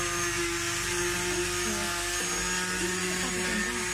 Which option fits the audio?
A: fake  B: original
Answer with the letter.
B